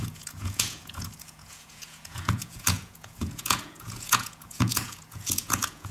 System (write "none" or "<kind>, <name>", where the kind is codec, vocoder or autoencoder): vocoder, Vocos